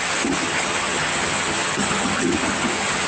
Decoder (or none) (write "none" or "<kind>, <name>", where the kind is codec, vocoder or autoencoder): vocoder, HiFi-GAN